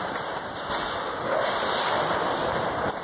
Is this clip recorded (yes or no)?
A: yes